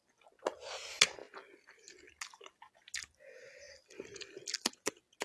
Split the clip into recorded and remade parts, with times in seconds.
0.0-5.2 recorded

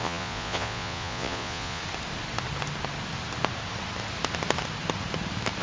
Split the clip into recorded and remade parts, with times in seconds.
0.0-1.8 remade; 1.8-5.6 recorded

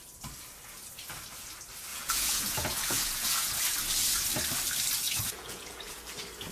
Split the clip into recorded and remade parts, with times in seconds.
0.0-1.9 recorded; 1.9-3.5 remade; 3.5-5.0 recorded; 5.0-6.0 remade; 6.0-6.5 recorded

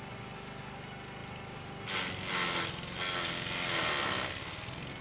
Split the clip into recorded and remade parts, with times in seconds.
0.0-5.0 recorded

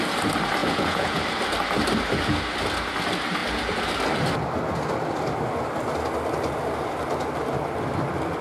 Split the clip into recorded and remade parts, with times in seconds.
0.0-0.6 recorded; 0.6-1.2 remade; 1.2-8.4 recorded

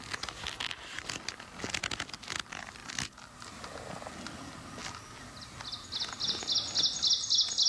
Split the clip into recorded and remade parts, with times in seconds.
0.0-7.7 recorded